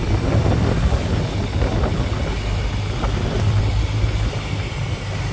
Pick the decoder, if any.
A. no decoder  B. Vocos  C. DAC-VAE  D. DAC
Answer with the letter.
A